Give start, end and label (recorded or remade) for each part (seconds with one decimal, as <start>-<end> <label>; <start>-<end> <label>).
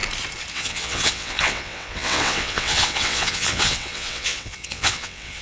0.0-0.5 recorded; 0.5-5.4 remade